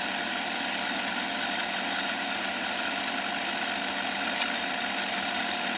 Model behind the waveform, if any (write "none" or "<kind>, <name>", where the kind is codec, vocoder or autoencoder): none